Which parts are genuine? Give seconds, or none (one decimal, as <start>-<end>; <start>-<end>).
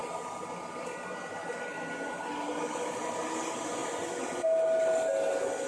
0.0-5.7